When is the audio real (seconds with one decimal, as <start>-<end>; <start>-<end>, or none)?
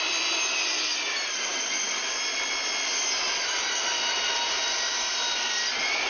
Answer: 0.0-6.1